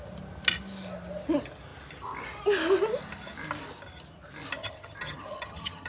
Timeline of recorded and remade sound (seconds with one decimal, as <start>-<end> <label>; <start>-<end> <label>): 0.0-4.6 recorded; 4.6-5.9 remade